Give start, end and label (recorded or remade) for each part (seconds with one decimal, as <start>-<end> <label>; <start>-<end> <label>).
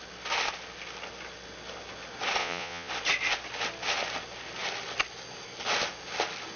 0.0-2.4 recorded; 2.4-2.9 remade; 2.9-6.6 recorded